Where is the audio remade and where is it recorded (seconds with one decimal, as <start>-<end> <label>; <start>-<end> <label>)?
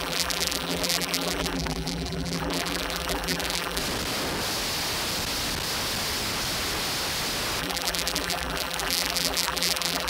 0.0-3.8 remade; 3.8-7.6 recorded; 7.6-10.1 remade